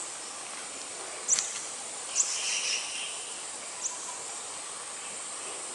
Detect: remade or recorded recorded